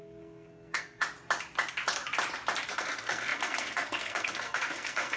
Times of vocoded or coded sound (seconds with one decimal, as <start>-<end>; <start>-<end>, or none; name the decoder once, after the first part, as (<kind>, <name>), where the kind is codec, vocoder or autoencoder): 0.0-1.0 (codec, SNAC); 2.7-5.2